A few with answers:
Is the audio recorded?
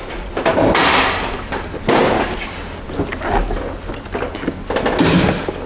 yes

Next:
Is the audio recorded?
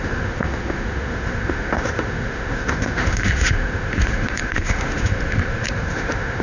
no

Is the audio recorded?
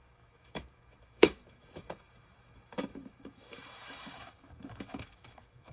no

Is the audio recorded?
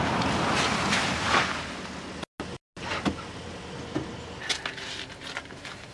yes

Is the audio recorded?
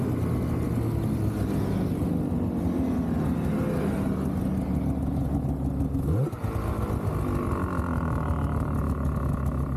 yes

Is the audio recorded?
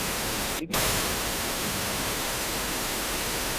no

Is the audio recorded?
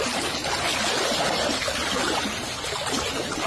yes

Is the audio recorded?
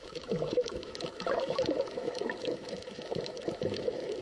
no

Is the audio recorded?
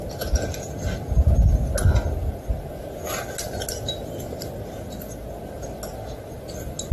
yes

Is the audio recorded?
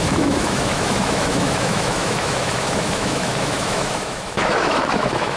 no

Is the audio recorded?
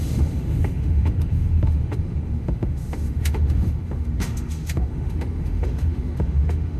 no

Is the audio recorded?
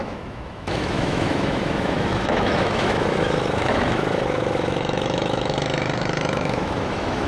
no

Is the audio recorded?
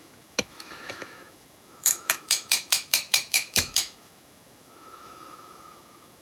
no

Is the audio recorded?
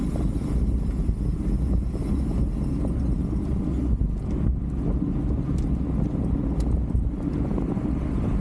yes